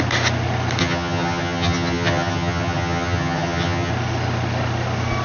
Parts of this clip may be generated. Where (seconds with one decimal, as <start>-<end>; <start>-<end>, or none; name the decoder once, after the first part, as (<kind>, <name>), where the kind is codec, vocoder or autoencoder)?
0.8-3.9 (vocoder, HiFi-GAN)